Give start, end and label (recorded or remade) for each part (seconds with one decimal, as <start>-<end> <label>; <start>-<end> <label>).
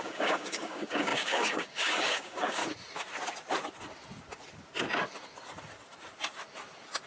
0.0-2.6 remade; 2.6-7.1 recorded